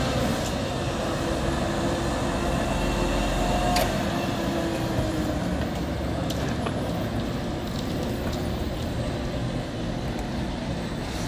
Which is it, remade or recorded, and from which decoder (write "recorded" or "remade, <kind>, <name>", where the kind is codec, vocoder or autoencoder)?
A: recorded